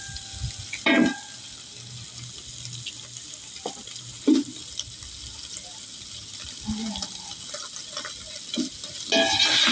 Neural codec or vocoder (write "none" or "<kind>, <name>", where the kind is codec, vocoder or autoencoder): none